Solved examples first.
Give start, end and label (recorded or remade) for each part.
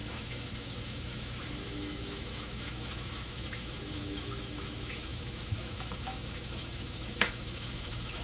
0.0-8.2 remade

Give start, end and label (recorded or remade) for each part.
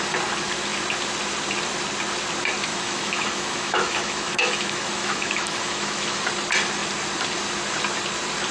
0.0-2.7 recorded; 2.7-6.2 remade; 6.2-8.5 recorded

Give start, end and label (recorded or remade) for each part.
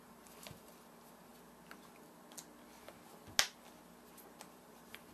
0.0-1.3 remade; 1.3-4.4 recorded; 4.4-5.1 remade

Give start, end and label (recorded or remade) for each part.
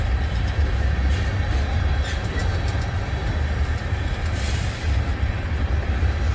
0.0-6.3 recorded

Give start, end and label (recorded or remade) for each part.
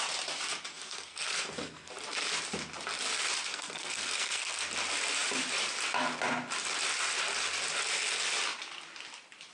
0.0-0.7 recorded; 0.7-1.9 remade; 1.9-3.5 recorded; 3.5-4.7 remade; 4.7-9.5 recorded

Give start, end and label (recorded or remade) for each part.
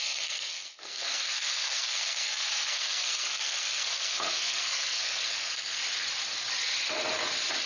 0.0-5.8 remade; 5.8-7.7 recorded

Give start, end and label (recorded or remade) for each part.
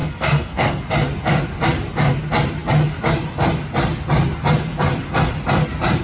0.0-0.8 remade; 0.8-6.0 recorded